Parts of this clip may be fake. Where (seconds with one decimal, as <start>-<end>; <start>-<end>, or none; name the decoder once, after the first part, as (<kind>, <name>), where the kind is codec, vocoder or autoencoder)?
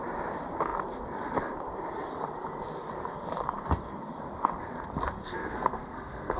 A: 5.2-6.4 (codec, SNAC)